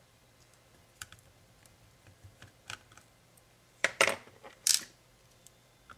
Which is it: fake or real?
fake